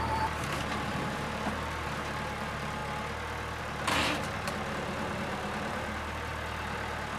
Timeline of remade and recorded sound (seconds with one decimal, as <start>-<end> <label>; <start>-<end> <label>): 0.0-2.8 remade; 2.8-3.6 recorded; 3.6-6.3 remade; 6.3-7.2 recorded